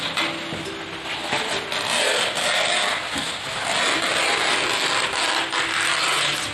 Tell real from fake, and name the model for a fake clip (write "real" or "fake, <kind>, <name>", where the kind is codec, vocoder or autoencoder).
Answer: real